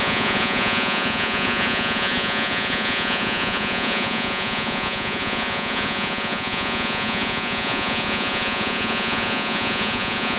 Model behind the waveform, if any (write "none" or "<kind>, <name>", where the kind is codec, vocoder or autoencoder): vocoder, Vocos